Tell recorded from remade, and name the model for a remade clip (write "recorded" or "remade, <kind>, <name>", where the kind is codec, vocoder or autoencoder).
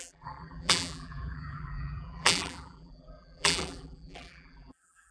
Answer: remade, vocoder, BigVGAN v2